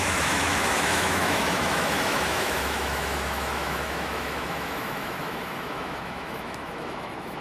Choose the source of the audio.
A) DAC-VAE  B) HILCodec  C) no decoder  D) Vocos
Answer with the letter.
A